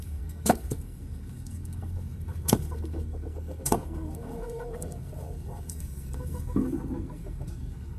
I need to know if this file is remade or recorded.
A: remade